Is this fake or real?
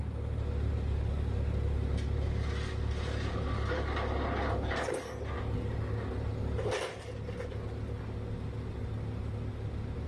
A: real